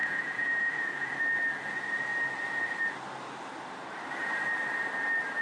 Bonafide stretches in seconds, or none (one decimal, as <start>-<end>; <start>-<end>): 1.1-5.4